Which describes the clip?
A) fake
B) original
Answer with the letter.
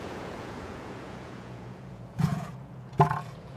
A